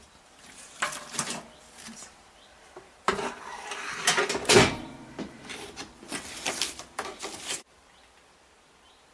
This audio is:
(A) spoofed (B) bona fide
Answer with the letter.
A